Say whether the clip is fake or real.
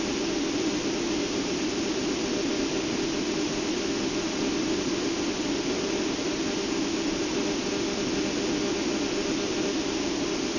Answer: real